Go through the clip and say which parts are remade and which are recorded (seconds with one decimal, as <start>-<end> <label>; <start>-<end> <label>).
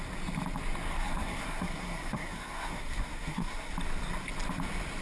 0.0-0.9 recorded; 0.9-3.7 remade; 3.7-5.0 recorded